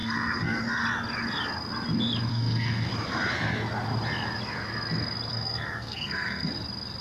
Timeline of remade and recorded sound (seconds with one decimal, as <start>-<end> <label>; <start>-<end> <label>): 0.0-0.6 remade; 0.6-2.3 recorded; 2.3-2.9 remade; 2.9-5.3 recorded; 5.3-6.5 remade; 6.5-7.0 recorded